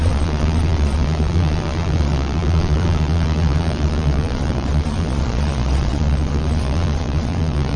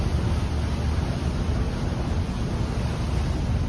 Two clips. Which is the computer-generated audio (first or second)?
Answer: first